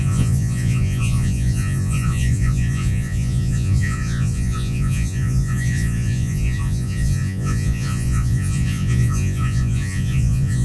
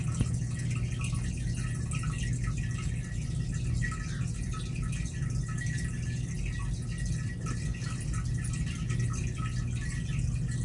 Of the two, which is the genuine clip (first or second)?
second